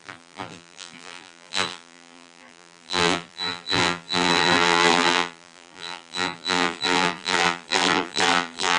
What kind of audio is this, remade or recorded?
remade